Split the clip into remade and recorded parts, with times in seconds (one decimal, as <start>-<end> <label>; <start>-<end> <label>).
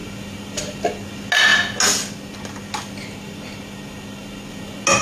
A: 0.0-5.0 recorded